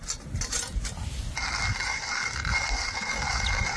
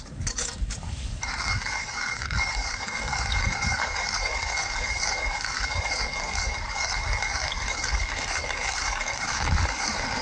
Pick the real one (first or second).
first